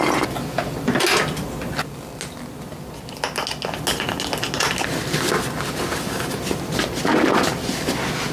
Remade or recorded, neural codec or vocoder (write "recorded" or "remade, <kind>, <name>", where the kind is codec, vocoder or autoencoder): recorded